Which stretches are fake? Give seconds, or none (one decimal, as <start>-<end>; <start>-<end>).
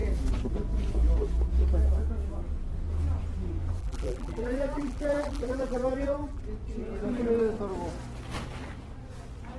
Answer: 3.8-6.4